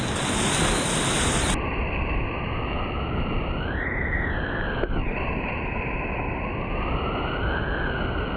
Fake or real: real